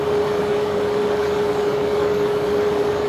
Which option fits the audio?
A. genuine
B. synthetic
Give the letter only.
B